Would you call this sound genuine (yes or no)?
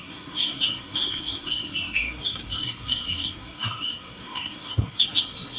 no